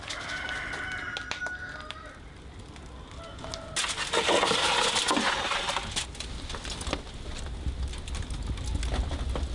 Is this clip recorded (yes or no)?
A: yes